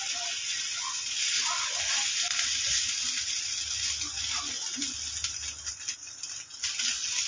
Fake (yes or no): no